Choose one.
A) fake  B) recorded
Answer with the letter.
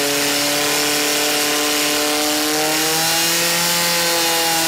B